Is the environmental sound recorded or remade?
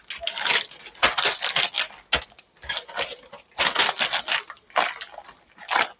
recorded